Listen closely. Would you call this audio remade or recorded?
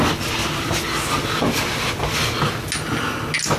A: recorded